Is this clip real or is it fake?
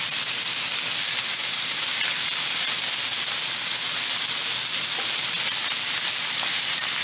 real